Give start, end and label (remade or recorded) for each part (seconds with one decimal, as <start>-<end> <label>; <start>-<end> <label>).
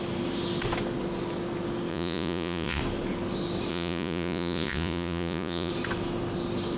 0.0-1.9 recorded; 1.9-2.8 remade; 2.8-3.7 recorded; 3.7-5.7 remade; 5.7-6.8 recorded